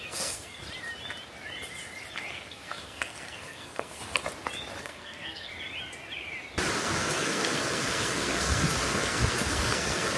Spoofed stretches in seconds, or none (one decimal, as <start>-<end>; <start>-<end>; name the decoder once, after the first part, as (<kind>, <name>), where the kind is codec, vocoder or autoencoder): 0.0-0.6 (codec, SNAC); 2.3-4.0; 4.8-5.5; 6.8-10.2

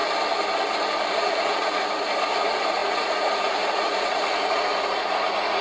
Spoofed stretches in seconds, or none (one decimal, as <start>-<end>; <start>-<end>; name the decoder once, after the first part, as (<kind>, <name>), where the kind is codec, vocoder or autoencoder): 1.1-5.6 (vocoder, Vocos)

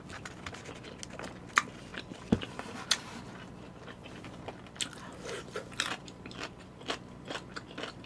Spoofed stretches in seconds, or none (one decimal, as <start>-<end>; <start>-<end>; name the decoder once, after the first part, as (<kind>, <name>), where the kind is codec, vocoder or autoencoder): none

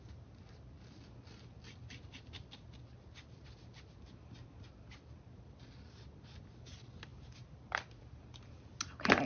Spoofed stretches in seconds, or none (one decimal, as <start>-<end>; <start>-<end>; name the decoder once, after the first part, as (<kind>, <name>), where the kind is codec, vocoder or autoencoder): none

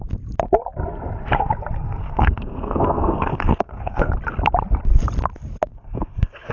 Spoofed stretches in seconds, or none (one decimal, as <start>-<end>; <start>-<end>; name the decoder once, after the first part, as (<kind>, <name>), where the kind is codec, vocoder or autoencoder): 2.0-4.1 (codec, SNAC); 5.7-6.5

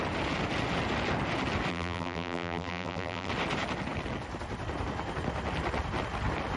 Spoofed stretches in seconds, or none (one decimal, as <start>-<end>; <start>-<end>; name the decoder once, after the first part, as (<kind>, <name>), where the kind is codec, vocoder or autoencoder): 1.7-3.3 (vocoder, BigVGAN v2)

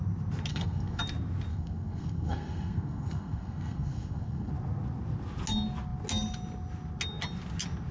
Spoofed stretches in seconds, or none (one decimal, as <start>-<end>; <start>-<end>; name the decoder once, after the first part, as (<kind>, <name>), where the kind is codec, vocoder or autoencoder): 0.5-1.0 (codec, SNAC); 1.5-4.5

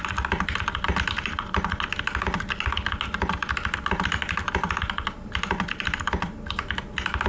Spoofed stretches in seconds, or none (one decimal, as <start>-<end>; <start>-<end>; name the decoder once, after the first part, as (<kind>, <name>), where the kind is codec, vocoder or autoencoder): none